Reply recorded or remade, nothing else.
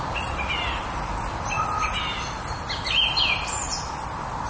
recorded